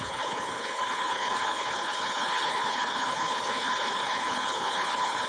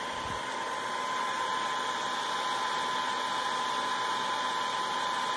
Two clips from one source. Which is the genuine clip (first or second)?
second